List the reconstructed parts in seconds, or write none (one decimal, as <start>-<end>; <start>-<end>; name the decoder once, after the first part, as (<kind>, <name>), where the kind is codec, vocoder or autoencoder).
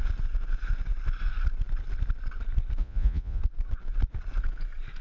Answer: 2.8-3.4 (vocoder, Vocos)